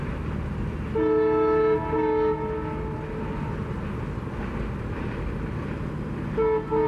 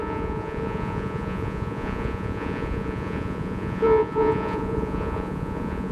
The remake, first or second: second